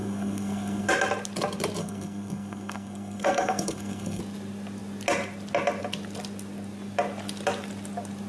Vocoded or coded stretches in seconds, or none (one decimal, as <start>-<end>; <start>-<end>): 0.0-0.9; 1.8-4.2